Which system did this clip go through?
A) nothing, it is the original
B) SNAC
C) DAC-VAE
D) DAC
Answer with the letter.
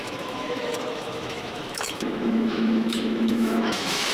C